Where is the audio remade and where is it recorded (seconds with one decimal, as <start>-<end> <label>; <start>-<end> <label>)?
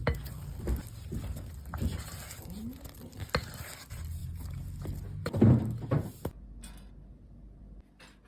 0.0-8.3 recorded